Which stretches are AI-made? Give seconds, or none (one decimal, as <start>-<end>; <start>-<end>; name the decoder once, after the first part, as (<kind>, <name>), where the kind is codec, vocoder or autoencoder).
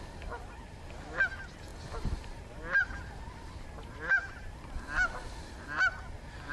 none